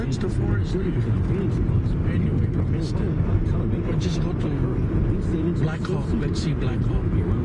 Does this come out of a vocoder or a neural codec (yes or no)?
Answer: no